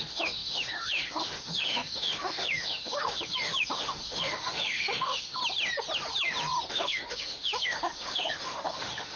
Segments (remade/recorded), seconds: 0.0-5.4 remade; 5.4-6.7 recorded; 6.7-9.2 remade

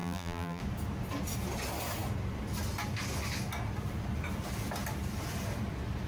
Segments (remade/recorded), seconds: 0.0-0.6 remade; 0.6-6.1 recorded

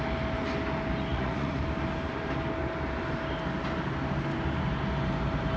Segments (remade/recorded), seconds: 0.0-1.1 recorded; 1.1-1.6 remade; 1.6-5.6 recorded

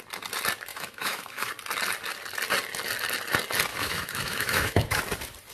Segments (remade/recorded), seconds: 0.0-0.7 recorded; 0.7-1.5 remade; 1.5-3.7 recorded; 3.7-5.0 remade; 5.0-5.5 recorded

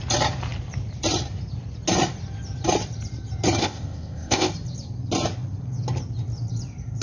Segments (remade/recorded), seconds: 0.0-3.6 recorded; 3.6-4.5 remade; 4.5-7.0 recorded

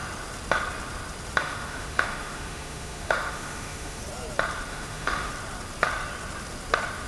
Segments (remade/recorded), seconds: 0.0-1.4 recorded; 1.4-4.0 remade; 4.0-4.7 recorded; 4.7-5.3 remade; 5.3-7.1 recorded

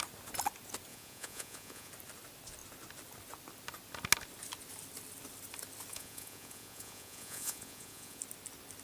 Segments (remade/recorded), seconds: 0.0-0.9 recorded; 0.9-1.9 remade; 1.9-5.9 recorded; 5.9-8.2 remade; 8.2-8.8 recorded